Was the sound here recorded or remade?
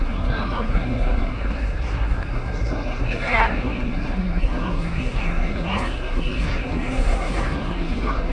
remade